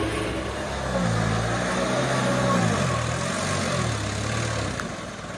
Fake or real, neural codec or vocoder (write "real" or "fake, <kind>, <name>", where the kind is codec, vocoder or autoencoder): real